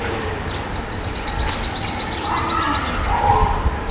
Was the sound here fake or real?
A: fake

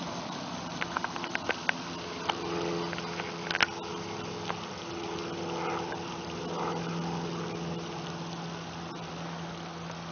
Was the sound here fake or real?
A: real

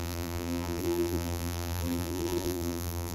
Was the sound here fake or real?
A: fake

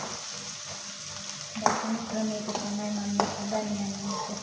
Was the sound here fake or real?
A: real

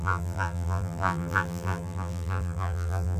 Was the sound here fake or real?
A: fake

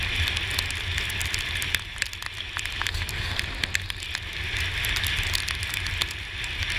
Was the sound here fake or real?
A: real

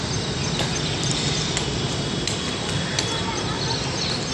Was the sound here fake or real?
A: real